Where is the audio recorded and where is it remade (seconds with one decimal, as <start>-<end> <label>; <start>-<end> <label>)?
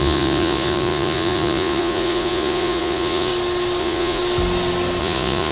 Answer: 0.0-3.3 remade; 3.3-3.8 recorded; 3.8-4.2 remade; 4.2-5.0 recorded; 5.0-5.5 remade